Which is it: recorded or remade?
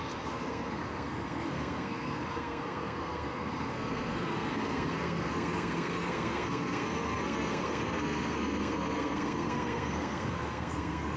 remade